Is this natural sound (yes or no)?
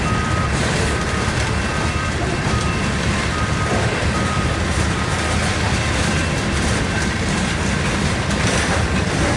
no